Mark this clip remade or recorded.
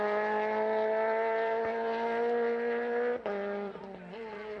remade